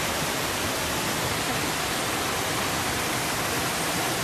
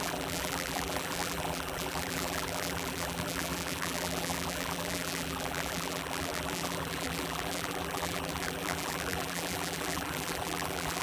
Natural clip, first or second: first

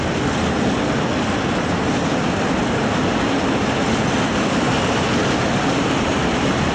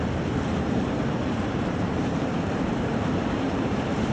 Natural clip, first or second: first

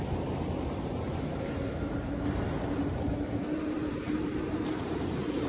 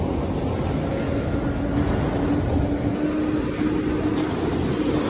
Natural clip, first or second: second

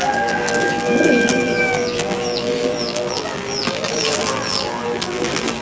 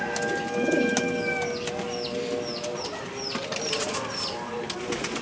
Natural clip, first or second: second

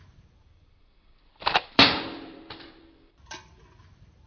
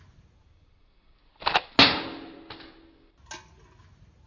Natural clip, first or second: second